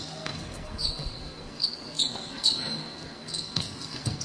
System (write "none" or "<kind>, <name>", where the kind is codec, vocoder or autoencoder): codec, SNAC